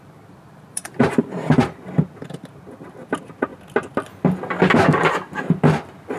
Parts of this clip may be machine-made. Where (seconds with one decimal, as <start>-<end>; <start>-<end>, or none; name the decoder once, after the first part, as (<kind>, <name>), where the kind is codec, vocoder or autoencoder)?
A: 0.7-1.5 (vocoder, BigVGAN v2)